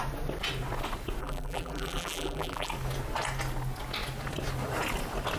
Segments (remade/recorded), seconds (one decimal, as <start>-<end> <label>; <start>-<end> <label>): 0.0-1.2 recorded; 1.2-2.7 remade; 2.7-5.4 recorded